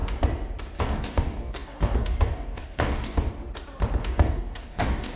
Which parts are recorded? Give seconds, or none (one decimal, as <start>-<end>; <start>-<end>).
0.0-0.8; 3.3-4.0